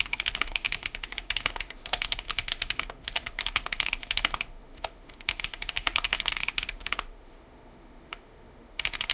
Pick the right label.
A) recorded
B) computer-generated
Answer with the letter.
B